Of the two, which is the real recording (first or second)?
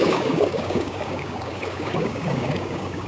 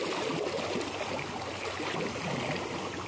second